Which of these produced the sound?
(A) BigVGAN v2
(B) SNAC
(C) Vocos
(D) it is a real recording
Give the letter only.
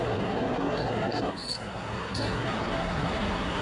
B